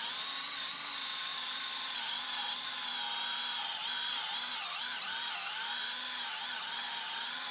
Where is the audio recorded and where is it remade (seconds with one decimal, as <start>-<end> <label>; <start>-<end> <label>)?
0.0-7.5 recorded